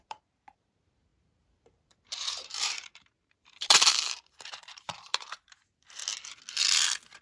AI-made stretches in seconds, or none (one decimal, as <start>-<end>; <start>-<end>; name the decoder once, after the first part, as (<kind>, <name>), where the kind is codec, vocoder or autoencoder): 0.0-6.0 (vocoder, BigVGAN v2)